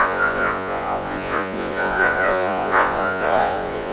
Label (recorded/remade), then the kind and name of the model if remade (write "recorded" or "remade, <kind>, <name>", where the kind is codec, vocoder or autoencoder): remade, vocoder, Vocos